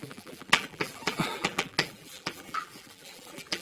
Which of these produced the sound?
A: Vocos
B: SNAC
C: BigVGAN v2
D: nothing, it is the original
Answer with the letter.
C